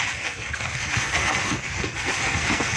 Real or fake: fake